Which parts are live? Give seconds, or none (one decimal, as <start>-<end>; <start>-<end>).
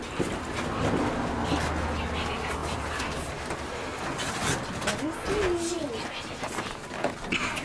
0.0-7.6